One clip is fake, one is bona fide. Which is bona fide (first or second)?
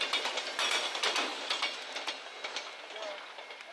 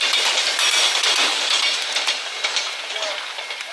first